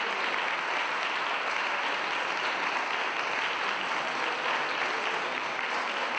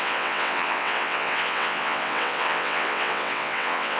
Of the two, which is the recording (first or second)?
first